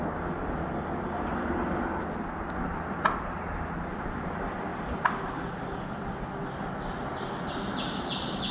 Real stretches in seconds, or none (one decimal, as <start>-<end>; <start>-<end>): 0.0-8.5